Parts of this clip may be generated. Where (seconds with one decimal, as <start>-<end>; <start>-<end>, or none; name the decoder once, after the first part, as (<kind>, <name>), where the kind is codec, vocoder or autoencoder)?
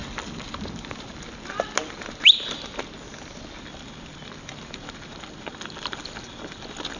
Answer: 3.6-7.0 (vocoder, BigVGAN v2)